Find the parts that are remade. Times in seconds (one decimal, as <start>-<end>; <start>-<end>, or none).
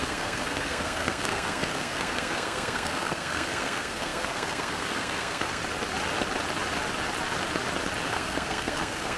0.0-5.6; 8.1-9.2